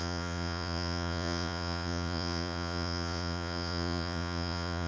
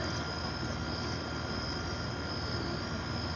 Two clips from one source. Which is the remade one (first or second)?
first